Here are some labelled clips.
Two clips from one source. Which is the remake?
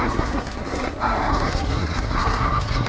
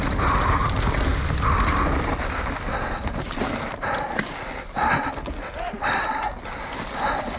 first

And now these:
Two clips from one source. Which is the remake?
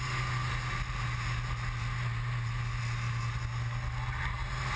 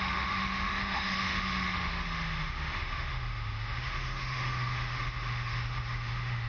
second